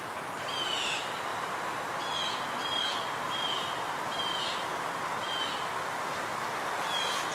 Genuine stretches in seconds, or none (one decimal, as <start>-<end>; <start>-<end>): 0.0-7.3